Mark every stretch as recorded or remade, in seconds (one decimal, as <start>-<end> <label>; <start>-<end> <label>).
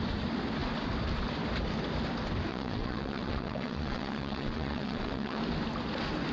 0.0-2.5 recorded; 2.5-5.4 remade; 5.4-6.3 recorded